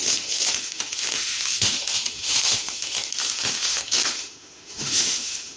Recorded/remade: remade